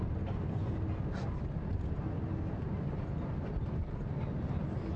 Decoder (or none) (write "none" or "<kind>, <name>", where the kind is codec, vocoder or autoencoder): none